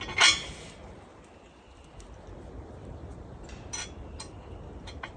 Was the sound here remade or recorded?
recorded